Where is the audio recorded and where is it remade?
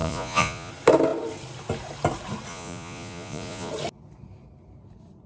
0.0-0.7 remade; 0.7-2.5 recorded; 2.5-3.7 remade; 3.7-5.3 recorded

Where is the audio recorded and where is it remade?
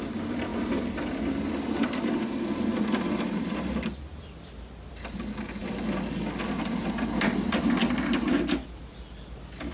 0.0-9.7 recorded